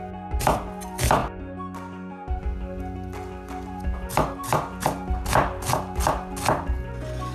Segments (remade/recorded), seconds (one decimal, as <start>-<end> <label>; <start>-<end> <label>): 0.0-7.3 recorded